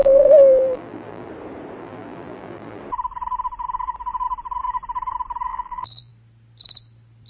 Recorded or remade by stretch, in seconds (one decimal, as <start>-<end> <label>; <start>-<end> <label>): 0.0-1.3 remade; 1.3-1.8 recorded; 1.8-2.8 remade; 2.8-5.5 recorded; 5.5-6.1 remade; 6.1-7.3 recorded